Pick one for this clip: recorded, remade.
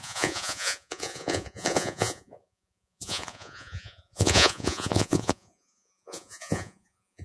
remade